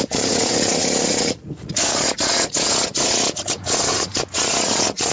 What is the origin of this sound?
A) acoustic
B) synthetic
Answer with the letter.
B